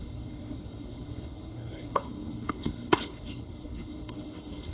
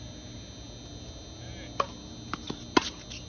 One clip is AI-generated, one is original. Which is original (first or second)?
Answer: second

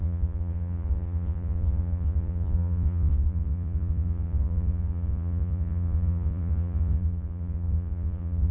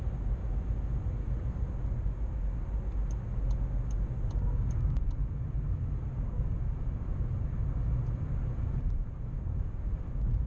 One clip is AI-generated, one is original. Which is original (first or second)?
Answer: second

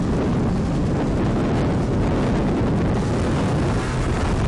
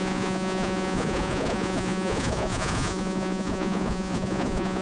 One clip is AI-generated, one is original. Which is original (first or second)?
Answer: first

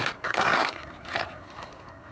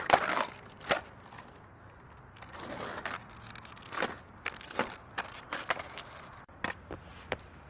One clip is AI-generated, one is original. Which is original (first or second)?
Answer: second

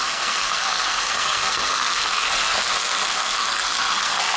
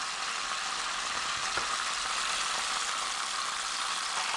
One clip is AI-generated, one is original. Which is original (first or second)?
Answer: second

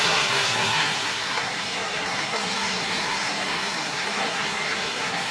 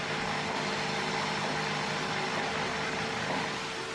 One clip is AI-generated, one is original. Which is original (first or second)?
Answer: second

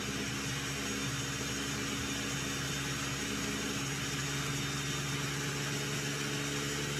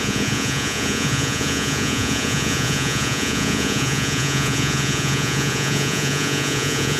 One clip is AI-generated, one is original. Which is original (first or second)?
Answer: first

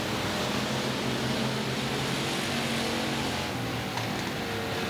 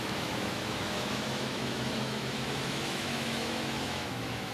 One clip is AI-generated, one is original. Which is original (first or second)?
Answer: first